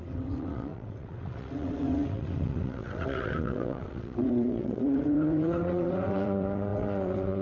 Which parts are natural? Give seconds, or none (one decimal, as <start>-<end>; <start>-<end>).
none